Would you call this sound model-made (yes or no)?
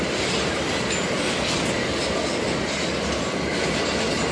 no